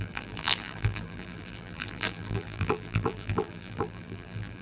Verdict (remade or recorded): remade